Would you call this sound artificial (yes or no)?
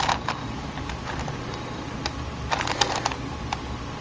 no